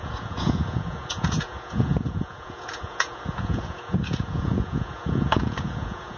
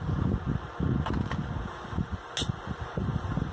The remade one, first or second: first